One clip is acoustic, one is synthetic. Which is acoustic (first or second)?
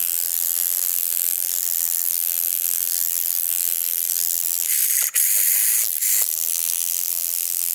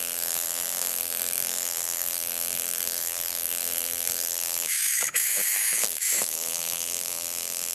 first